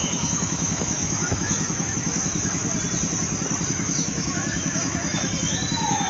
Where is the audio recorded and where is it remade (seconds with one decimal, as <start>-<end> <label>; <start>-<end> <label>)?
0.0-2.6 remade; 2.6-3.7 recorded; 3.7-6.1 remade